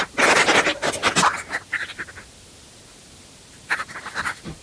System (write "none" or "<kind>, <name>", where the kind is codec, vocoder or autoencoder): none